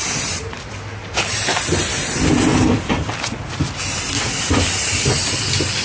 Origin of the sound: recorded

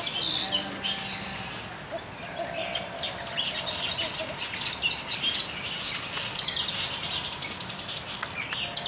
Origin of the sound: recorded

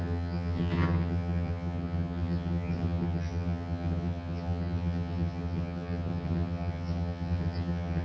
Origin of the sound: remade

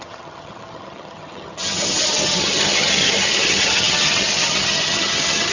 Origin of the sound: remade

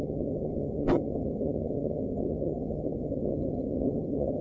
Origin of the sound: remade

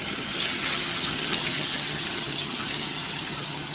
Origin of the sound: remade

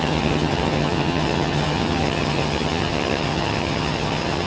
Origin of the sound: remade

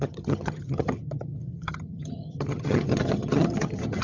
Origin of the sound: remade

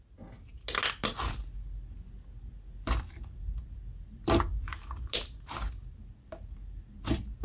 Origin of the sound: recorded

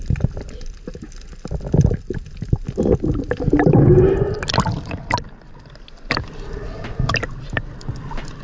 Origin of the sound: recorded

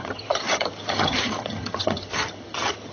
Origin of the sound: remade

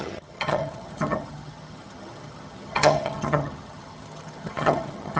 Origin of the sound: remade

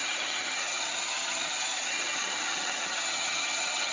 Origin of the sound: remade